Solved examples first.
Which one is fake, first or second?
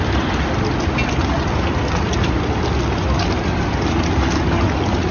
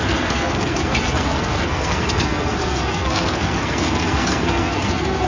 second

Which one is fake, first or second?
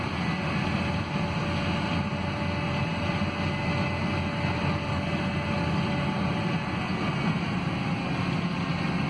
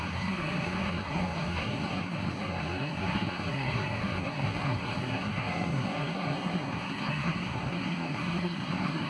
second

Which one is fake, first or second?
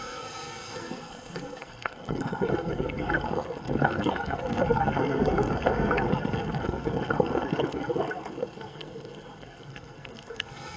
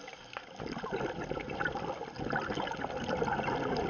first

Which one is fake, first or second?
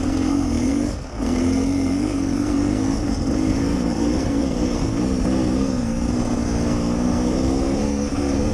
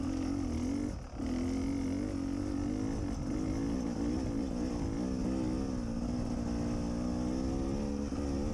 first